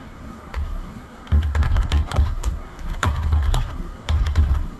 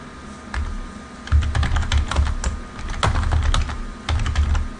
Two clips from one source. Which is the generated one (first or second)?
first